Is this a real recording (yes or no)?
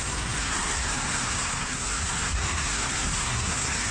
no